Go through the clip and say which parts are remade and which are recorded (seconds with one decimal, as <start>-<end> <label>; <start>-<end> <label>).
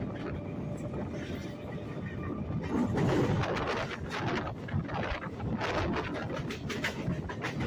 0.0-7.7 recorded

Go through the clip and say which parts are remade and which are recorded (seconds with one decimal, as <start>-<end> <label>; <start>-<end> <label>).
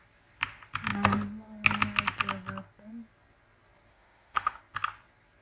0.0-3.9 recorded; 3.9-4.6 remade; 4.6-5.4 recorded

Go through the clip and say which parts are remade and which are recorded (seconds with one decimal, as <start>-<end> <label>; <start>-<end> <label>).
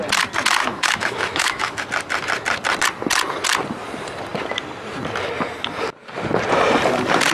0.0-0.6 recorded; 0.6-1.8 remade; 1.8-7.3 recorded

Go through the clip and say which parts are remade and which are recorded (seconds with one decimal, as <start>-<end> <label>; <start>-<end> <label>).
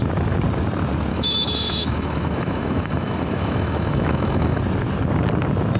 0.0-1.1 recorded; 1.1-4.6 remade; 4.6-5.8 recorded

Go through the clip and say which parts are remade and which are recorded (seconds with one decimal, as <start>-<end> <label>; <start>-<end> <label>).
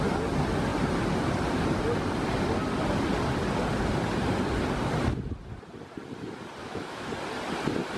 0.0-6.6 recorded; 6.6-7.1 remade; 7.1-8.0 recorded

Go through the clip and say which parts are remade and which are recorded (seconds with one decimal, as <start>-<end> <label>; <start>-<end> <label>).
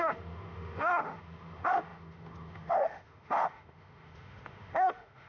0.0-5.3 remade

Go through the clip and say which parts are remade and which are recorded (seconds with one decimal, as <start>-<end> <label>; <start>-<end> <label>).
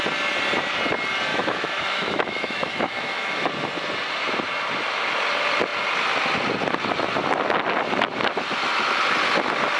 0.0-1.3 recorded; 1.3-3.5 remade; 3.5-9.8 recorded